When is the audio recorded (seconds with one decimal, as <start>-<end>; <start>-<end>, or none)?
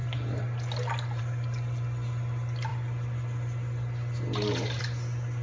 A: 0.0-5.4